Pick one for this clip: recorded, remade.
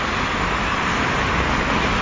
recorded